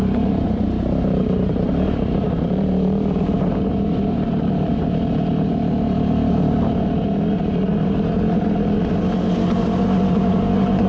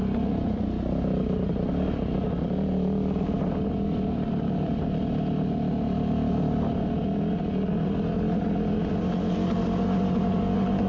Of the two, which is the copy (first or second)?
first